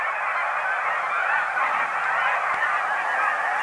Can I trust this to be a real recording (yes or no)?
yes